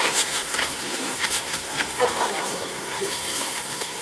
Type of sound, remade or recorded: remade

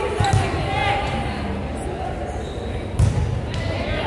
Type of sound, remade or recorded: recorded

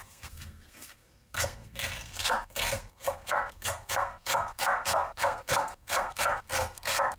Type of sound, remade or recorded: remade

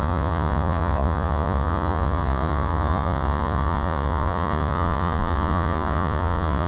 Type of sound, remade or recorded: remade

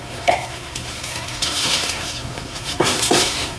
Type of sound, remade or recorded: remade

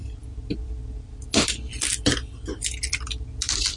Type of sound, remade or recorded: recorded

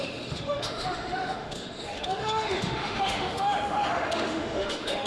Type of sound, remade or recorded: remade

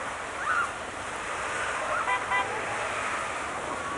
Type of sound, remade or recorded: recorded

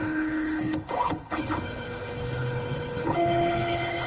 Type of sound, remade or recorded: remade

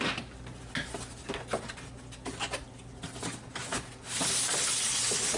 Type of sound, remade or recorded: recorded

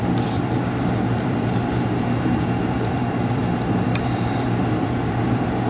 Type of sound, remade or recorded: remade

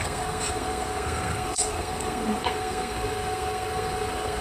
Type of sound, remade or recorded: remade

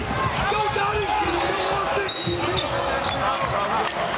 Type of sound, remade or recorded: recorded